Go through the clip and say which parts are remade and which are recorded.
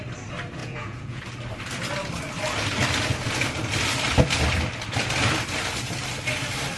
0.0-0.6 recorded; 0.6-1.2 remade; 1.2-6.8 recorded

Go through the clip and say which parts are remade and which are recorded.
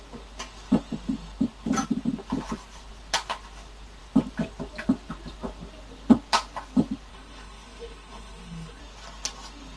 0.0-7.1 recorded; 7.1-8.8 remade; 8.8-9.8 recorded